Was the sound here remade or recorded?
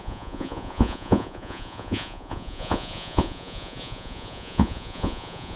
remade